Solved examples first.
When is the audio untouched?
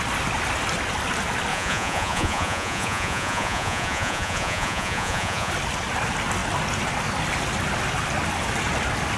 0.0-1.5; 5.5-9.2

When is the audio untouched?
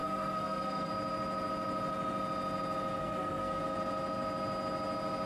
0.9-3.0; 3.6-5.3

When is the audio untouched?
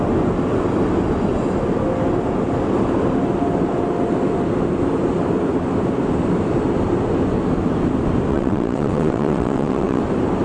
0.0-8.3; 10.0-10.4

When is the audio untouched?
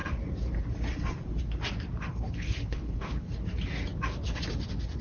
0.0-2.1; 3.3-5.0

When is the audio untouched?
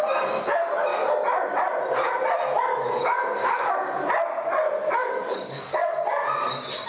0.0-2.7; 3.7-5.0; 5.9-6.9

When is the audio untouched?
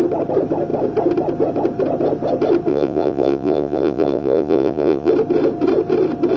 0.0-2.7; 5.1-6.4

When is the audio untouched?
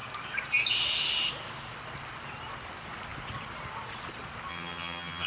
0.0-4.5